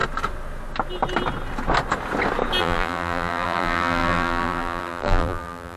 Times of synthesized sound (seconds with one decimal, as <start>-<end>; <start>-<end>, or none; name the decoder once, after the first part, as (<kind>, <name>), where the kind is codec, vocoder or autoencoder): 2.6-5.8 (vocoder, BigVGAN v2)